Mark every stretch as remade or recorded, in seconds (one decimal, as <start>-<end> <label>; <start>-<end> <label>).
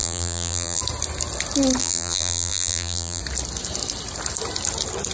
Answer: 0.0-0.8 remade; 0.8-1.8 recorded; 1.8-3.2 remade; 3.2-5.1 recorded